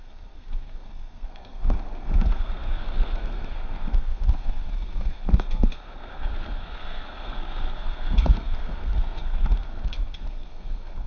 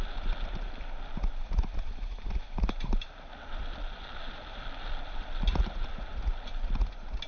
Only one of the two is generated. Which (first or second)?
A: first